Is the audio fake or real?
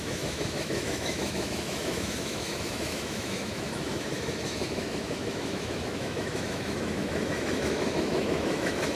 fake